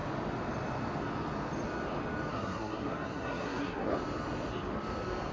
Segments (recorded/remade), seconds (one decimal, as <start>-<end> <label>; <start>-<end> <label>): 0.0-2.3 recorded; 2.3-3.9 remade; 3.9-5.3 recorded